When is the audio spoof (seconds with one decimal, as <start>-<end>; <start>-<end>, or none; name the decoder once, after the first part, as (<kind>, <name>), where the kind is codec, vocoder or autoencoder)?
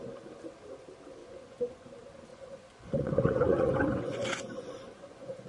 1.2-1.9 (vocoder, Vocos); 2.3-5.5